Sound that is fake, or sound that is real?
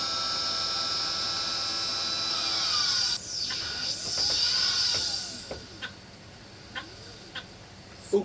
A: real